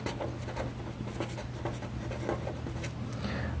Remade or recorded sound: recorded